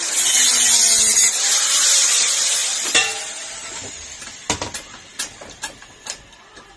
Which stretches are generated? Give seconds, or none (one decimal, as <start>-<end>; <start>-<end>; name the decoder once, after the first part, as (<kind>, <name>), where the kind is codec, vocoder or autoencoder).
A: none